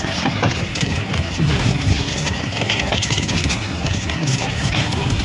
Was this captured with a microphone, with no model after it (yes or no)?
no